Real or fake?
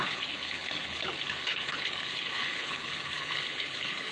fake